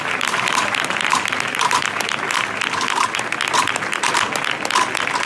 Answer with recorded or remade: recorded